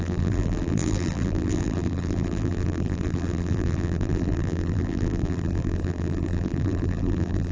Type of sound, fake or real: fake